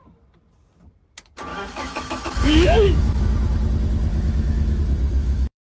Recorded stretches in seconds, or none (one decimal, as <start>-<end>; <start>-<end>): 0.0-1.5; 3.2-4.1; 4.8-5.2